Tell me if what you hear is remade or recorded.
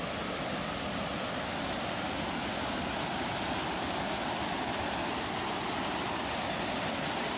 recorded